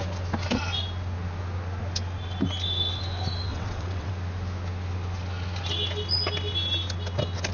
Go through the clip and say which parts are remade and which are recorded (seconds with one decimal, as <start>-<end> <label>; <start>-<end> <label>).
0.0-3.5 recorded; 3.5-4.1 remade; 4.1-7.5 recorded